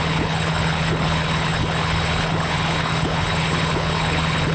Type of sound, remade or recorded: remade